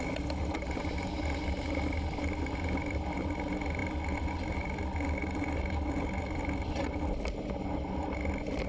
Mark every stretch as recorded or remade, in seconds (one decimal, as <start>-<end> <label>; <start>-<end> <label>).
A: 0.0-8.7 recorded